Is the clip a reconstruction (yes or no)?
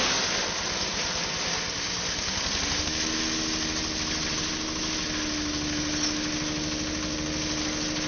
no